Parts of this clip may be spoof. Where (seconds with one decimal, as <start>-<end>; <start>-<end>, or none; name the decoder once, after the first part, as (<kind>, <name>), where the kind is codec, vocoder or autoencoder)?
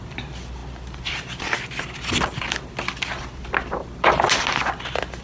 none